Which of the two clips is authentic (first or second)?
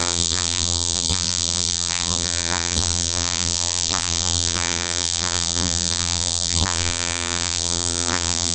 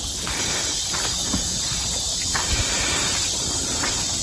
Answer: second